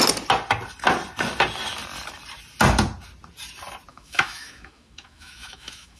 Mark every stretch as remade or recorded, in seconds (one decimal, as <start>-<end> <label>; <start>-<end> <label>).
0.0-3.9 recorded; 3.9-6.0 remade